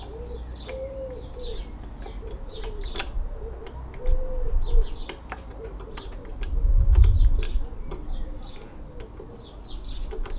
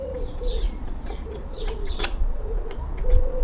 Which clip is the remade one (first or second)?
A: second